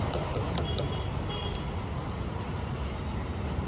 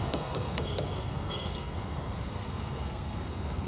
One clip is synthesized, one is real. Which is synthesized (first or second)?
second